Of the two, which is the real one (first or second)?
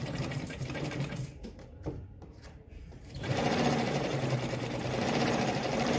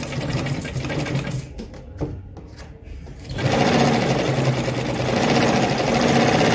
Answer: second